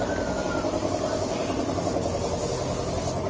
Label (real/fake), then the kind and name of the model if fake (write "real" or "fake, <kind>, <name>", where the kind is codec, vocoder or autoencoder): real